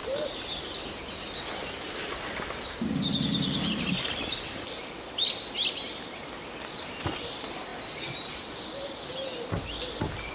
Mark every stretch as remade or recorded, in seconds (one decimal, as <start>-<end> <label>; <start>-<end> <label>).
0.0-10.3 recorded